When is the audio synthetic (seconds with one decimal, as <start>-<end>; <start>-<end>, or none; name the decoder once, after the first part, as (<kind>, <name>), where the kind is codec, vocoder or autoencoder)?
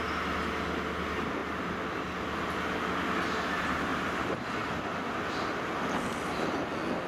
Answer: none